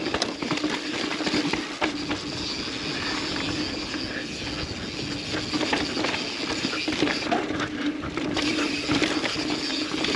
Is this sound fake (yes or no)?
no